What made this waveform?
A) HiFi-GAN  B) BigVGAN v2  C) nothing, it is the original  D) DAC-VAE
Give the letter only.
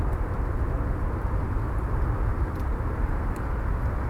C